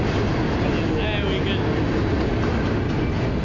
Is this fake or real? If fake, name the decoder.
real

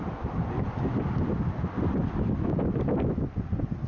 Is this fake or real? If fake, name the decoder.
real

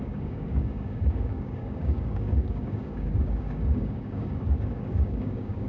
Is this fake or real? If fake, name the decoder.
fake, codec, DAC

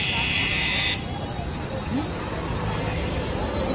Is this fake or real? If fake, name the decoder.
real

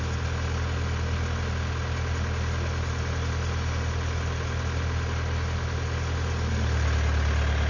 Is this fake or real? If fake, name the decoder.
real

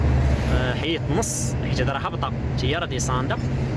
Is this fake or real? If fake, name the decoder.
real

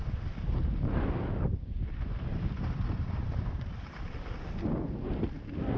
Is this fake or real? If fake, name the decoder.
real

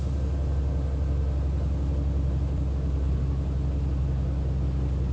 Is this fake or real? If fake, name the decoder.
real